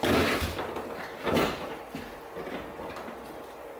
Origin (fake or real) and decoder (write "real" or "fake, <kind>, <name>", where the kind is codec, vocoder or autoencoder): real